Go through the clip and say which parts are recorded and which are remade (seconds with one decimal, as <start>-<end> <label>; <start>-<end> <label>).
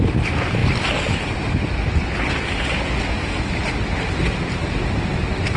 0.0-5.6 recorded